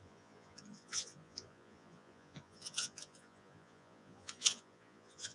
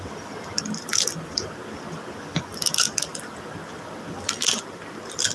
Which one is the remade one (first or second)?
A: first